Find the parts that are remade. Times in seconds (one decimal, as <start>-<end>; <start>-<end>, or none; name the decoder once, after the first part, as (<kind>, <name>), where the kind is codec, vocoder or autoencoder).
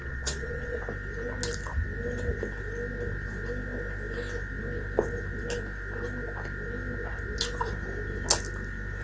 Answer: 0.0-0.8 (vocoder, WaveNeXt)